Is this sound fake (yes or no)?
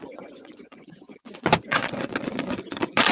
yes